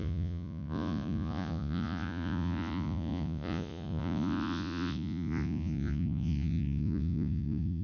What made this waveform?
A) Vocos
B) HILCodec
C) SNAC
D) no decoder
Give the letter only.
A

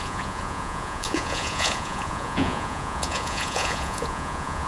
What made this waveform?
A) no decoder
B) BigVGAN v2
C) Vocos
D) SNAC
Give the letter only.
C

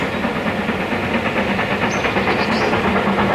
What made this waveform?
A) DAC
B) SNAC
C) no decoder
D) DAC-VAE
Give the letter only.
C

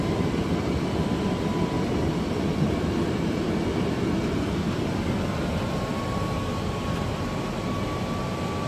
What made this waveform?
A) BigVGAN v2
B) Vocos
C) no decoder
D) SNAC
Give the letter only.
C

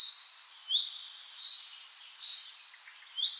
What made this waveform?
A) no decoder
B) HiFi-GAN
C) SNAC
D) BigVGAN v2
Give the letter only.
D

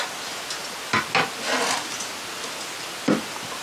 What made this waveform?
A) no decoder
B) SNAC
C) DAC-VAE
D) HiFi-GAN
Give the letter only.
A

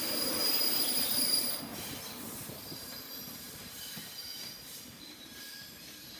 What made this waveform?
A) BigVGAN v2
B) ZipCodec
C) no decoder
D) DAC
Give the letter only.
A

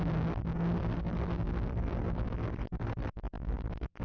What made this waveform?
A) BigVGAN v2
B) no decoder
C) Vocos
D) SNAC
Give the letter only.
B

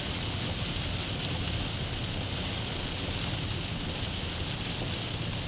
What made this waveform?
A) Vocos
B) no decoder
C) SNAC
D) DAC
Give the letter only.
B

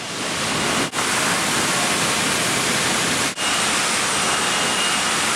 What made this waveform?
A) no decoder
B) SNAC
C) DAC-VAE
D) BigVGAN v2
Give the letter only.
A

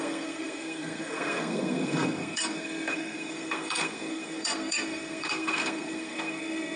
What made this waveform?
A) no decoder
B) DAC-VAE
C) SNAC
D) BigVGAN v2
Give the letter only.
C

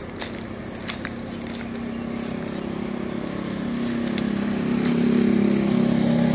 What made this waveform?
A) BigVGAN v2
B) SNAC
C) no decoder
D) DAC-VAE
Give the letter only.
C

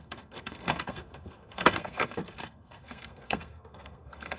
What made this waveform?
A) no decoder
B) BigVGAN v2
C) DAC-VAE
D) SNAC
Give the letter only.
D